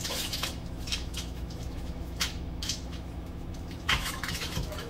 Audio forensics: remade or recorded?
remade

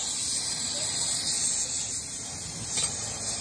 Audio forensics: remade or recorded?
recorded